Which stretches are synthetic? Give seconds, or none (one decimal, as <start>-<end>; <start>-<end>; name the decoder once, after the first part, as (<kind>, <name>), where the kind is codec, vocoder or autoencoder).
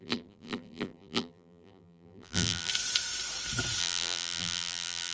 0.0-2.7 (vocoder, BigVGAN v2); 3.8-5.1